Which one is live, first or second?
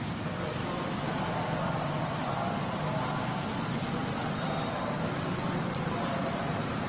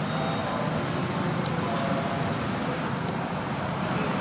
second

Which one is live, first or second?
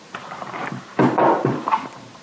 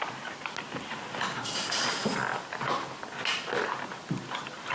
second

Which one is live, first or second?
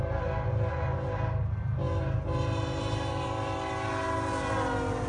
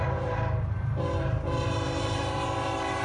first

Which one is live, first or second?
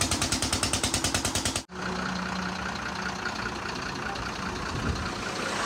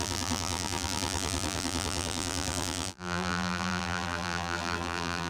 first